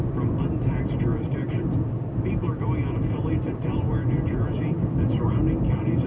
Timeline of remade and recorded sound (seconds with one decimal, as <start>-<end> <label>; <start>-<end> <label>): 0.0-6.1 recorded